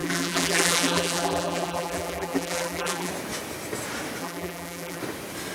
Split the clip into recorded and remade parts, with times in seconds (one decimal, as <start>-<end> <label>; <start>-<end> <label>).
0.0-3.1 remade; 3.1-4.2 recorded; 4.2-5.0 remade; 5.0-5.5 recorded